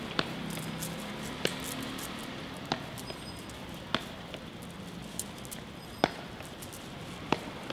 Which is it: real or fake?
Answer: real